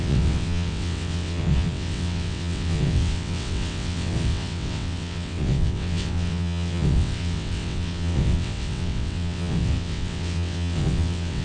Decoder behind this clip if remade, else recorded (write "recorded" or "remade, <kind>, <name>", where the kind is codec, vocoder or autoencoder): remade, vocoder, WaveNeXt